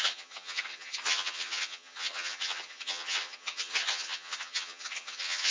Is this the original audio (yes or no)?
no